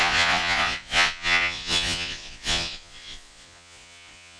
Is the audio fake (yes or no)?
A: yes